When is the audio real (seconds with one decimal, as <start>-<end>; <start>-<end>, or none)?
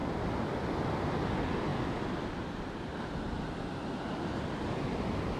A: 0.0-5.4